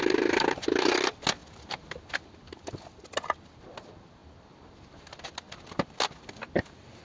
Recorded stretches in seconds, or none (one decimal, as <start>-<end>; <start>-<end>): 0.0-7.0